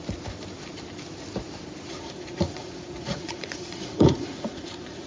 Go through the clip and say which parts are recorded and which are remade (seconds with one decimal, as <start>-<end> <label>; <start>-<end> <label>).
0.0-1.9 recorded; 1.9-5.1 remade